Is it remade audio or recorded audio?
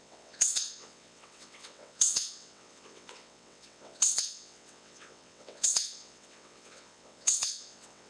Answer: remade